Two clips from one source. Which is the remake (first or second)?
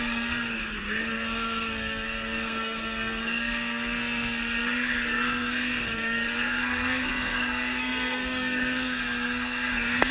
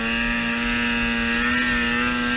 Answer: first